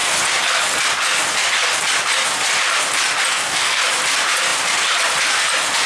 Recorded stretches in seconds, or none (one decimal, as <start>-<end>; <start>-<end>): 0.0-3.3; 3.8-5.9